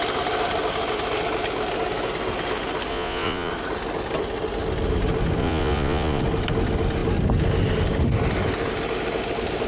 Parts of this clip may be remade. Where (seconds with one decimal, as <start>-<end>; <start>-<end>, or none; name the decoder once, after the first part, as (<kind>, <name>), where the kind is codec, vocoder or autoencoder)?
2.9-3.5 (vocoder, Vocos); 5.4-6.2